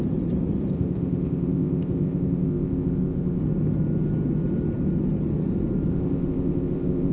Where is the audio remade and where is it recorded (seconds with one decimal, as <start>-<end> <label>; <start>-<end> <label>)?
0.0-0.7 recorded; 0.7-3.4 remade; 3.4-5.9 recorded; 5.9-7.1 remade